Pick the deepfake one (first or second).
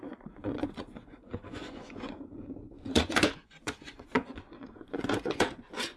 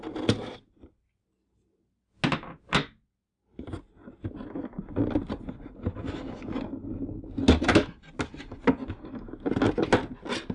first